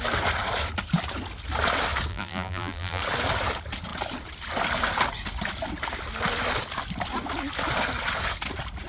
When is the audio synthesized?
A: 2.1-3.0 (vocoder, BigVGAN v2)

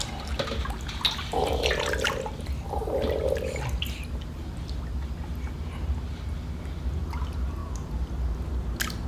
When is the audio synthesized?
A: none

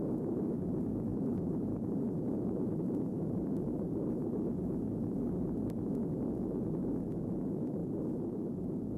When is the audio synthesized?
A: 1.1-4.3 (vocoder, BigVGAN v2)

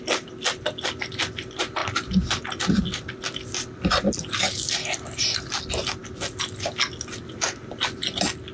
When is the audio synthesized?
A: none

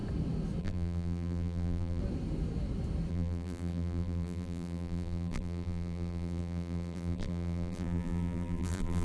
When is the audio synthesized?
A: 0.6-2.0 (vocoder, BigVGAN v2); 3.1-9.0

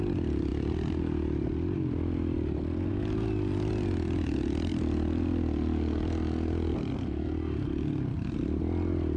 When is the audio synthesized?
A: none